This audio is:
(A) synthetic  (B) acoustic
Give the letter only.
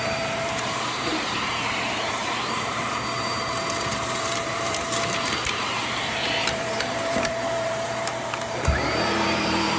A